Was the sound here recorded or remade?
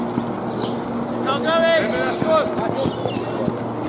recorded